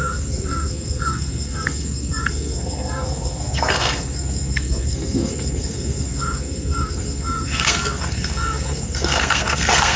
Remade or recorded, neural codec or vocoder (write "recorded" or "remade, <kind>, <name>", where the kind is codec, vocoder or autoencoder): remade, codec, SNAC